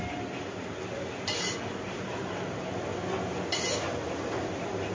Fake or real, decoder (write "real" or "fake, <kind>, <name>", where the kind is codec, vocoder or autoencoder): real